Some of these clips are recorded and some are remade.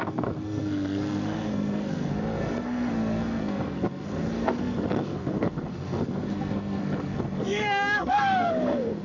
remade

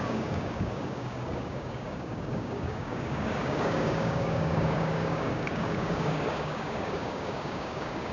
remade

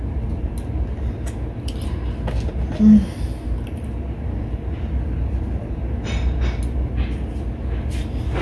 recorded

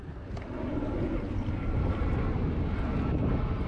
recorded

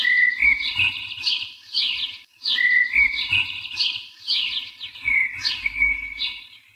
recorded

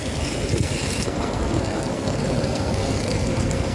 remade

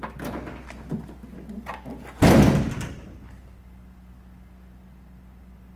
recorded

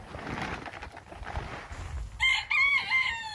recorded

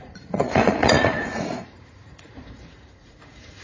remade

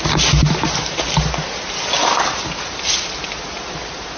recorded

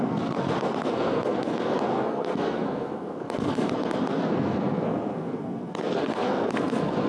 remade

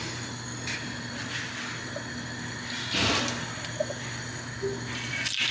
recorded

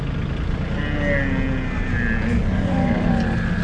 recorded